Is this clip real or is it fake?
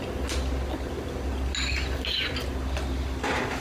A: real